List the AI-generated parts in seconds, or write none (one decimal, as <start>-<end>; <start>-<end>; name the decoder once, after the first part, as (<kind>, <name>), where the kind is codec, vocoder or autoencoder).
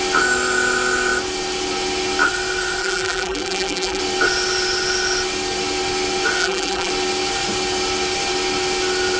2.8-4.0 (vocoder, BigVGAN v2); 6.4-6.9